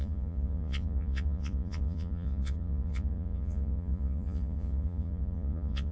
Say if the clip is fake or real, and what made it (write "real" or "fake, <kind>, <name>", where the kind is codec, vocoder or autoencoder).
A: fake, vocoder, Vocos